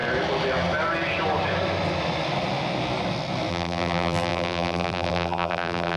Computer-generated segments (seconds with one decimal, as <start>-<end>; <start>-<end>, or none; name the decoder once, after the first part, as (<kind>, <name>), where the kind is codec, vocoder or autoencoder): 3.5-6.0 (vocoder, BigVGAN v2)